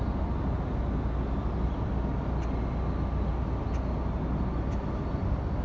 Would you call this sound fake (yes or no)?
no